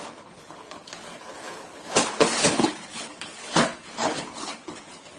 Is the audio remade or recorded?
remade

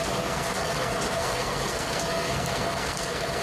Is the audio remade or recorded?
remade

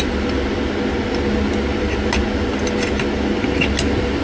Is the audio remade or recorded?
recorded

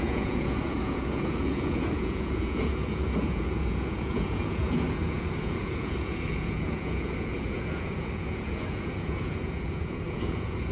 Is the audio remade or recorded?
remade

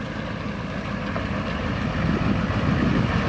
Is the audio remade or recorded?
recorded